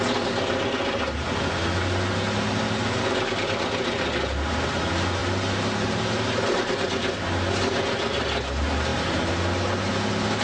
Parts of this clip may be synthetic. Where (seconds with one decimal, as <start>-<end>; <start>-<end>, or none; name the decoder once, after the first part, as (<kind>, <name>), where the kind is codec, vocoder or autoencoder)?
none